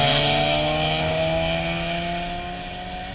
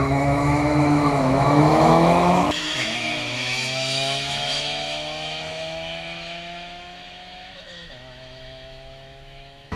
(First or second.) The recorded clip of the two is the first